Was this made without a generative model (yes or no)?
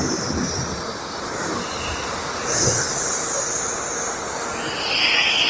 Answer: yes